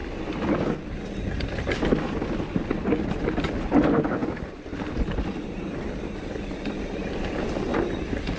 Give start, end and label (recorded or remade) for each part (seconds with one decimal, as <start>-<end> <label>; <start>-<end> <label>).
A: 0.0-4.2 recorded; 4.2-4.9 remade; 4.9-8.4 recorded